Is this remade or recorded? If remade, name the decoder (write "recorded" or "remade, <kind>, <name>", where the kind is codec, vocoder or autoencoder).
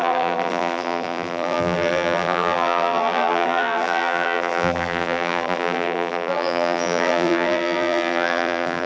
remade, vocoder, BigVGAN v2